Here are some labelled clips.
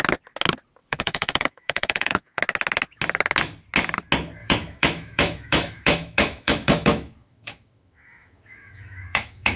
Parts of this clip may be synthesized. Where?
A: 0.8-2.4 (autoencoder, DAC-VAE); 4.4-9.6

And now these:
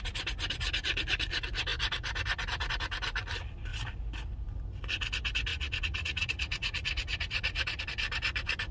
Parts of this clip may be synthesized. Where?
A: 5.5-7.8 (vocoder, Vocos)

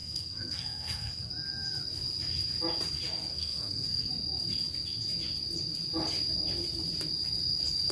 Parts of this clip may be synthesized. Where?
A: 0.0-1.3 (codec, SNAC); 3.3-4.1

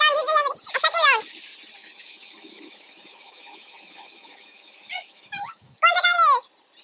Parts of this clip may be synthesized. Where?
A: 1.8-5.9 (autoencoder, DAC-VAE)

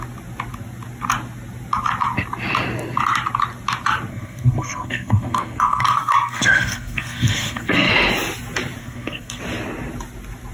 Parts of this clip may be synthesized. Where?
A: 4.1-7.9 (codec, SNAC); 8.8-9.4